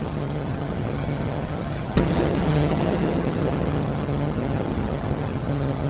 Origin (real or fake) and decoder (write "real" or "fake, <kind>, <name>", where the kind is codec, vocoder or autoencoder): fake, vocoder, HiFi-GAN